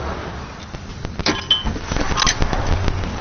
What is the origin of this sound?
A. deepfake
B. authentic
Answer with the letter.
B